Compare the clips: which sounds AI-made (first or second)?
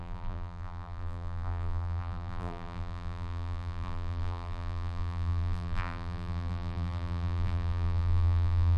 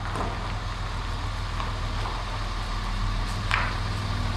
first